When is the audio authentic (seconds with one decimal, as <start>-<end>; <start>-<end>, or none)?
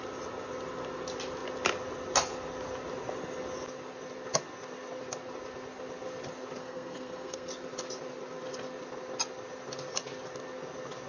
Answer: 0.0-6.6; 7.5-11.1